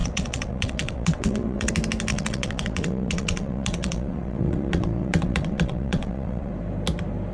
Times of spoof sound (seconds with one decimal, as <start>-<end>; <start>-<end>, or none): 0.0-1.7; 2.1-6.5